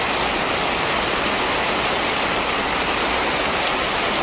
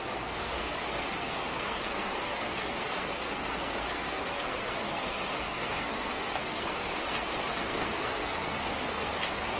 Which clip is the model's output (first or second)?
second